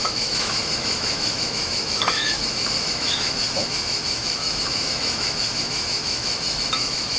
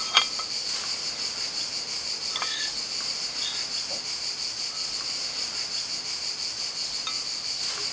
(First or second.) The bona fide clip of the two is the second